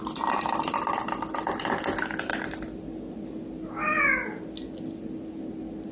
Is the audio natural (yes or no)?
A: yes